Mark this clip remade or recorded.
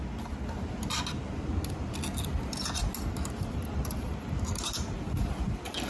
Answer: recorded